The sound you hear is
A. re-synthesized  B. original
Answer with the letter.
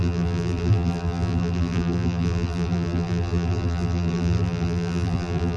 A